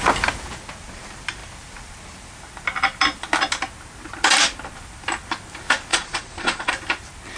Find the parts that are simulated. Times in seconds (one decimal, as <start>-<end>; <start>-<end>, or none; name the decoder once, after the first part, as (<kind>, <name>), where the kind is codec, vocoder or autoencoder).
5.9-6.7 (vocoder, Vocos)